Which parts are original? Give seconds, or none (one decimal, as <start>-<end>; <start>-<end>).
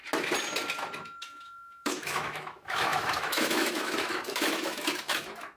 0.0-1.0